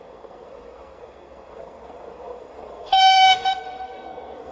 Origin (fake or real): fake